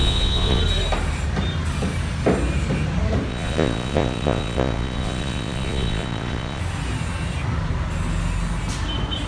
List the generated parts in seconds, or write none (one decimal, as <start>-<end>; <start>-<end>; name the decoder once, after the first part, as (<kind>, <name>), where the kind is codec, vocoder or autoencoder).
0.0-0.6 (vocoder, Vocos); 3.3-6.6